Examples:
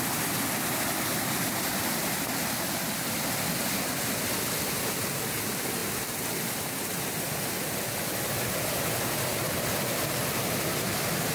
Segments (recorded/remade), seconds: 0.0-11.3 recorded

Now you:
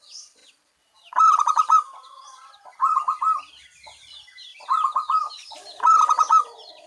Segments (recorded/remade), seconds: 0.0-6.9 remade

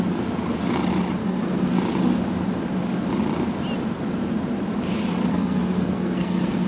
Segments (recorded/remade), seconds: 0.0-1.2 recorded; 1.2-1.7 remade; 1.7-5.3 recorded; 5.3-6.7 remade

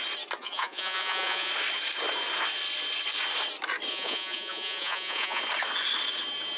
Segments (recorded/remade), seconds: 0.0-0.4 recorded; 0.4-1.5 remade; 1.5-3.9 recorded; 3.9-5.4 remade; 5.4-6.6 recorded

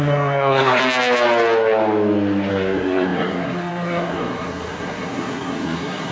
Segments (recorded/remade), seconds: 0.0-0.8 remade; 0.8-2.5 recorded; 2.5-6.1 remade

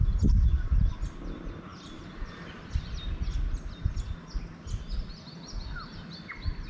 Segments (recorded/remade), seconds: 0.0-6.7 recorded

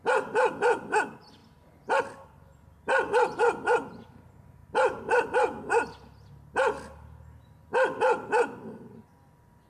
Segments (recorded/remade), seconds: 0.0-9.7 recorded